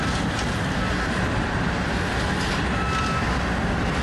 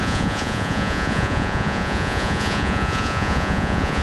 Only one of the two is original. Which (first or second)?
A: first